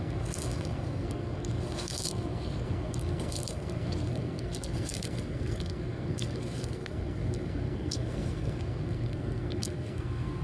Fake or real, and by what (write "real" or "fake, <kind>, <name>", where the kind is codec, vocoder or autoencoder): fake, codec, SNAC